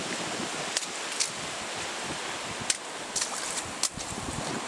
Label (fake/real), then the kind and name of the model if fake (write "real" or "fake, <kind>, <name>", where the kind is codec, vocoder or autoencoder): real